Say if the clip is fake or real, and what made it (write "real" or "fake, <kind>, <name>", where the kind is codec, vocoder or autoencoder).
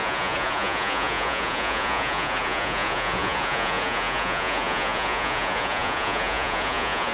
fake, vocoder, Vocos